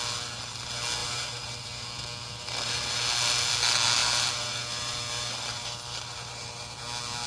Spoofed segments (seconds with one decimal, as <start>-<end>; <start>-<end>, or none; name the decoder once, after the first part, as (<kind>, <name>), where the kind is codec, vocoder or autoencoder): 1.0-3.5 (vocoder, BigVGAN v2); 4.0-6.8